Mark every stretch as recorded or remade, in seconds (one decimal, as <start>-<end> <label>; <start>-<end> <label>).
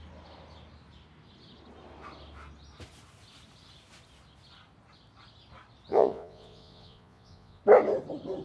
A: 0.0-5.9 recorded; 5.9-7.6 remade; 7.6-8.4 recorded